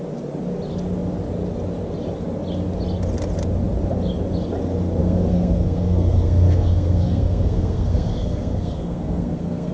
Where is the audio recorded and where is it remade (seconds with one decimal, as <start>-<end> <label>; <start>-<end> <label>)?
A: 0.0-5.0 recorded; 5.0-9.7 remade